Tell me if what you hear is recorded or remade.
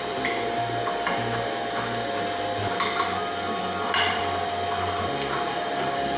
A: recorded